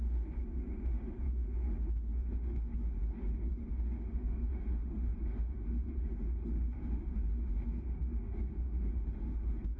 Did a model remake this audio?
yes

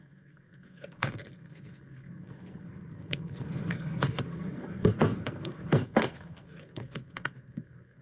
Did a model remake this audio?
yes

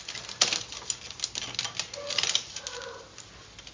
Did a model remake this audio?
no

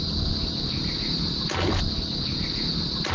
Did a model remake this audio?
no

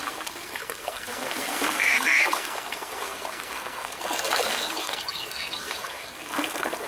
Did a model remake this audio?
yes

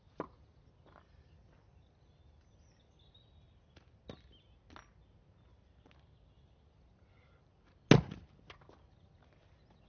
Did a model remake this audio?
no